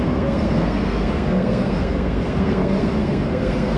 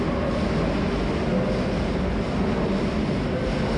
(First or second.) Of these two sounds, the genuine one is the second